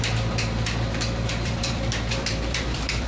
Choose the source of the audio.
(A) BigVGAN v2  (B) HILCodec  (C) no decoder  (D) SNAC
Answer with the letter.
A